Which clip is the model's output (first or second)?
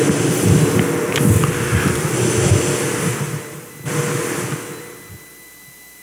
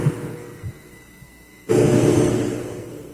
second